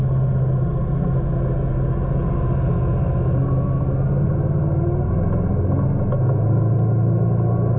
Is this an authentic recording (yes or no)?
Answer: yes